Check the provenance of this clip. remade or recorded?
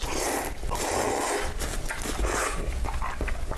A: recorded